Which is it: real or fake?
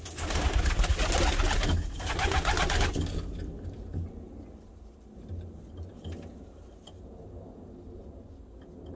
real